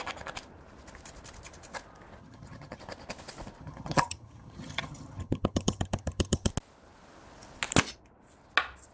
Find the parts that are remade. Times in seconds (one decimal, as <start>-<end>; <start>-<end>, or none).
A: 2.2-2.8; 3.6-6.5